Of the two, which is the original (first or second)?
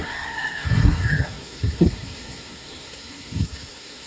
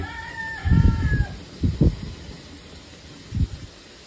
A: second